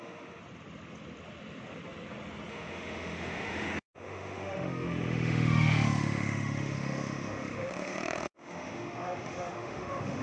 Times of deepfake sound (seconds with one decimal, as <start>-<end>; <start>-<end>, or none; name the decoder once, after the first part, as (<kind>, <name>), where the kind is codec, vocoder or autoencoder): 0.0-0.4 (autoencoder, DAC-VAE); 2.5-10.2